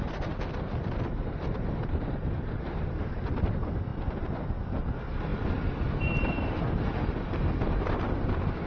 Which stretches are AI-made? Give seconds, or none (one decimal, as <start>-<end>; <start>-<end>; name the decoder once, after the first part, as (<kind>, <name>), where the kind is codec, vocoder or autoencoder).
none